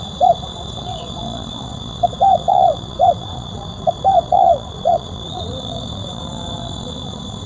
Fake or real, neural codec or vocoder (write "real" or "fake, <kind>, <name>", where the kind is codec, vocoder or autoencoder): fake, vocoder, WaveNeXt